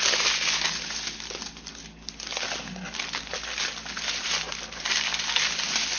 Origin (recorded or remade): recorded